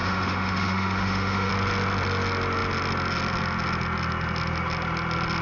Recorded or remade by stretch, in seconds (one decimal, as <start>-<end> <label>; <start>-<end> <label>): 0.0-1.5 remade; 1.5-5.4 recorded